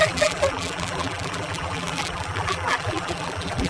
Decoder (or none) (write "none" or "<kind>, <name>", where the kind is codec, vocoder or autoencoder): vocoder, BigVGAN v2